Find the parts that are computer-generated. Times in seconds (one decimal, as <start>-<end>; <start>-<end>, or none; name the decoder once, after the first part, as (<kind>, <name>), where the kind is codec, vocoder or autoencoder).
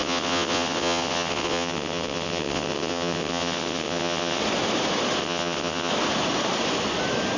0.0-4.4 (vocoder, WaveNeXt); 5.2-5.9